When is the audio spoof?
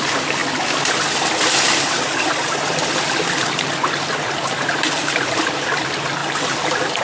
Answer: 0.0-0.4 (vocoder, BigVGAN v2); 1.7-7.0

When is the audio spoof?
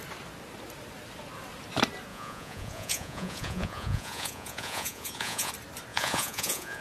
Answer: 2.1-5.5 (vocoder, Vocos); 5.9-6.8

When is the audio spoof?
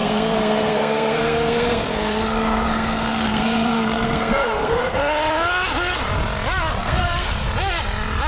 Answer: 0.0-5.0 (codec, SNAC); 6.8-7.3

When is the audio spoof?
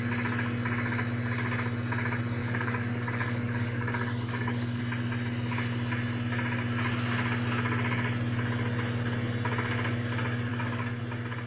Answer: 2.4-4.8 (codec, DAC); 10.5-11.0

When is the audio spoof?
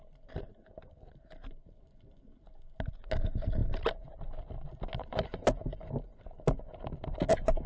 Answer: none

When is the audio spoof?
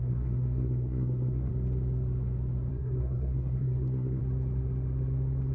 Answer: 0.0-1.5 (codec, SNAC); 2.7-4.2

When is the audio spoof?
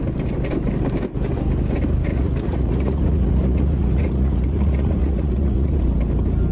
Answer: 2.1-5.8 (vocoder, Vocos)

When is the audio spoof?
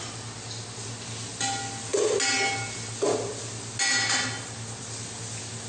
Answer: none